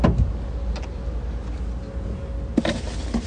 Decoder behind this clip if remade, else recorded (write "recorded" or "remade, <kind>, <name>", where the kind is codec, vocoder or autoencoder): recorded